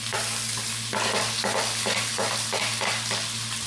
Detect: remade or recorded recorded